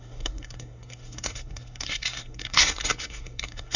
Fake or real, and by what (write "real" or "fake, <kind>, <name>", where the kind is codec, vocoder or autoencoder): fake, codec, SNAC